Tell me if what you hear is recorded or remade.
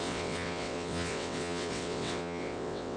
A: remade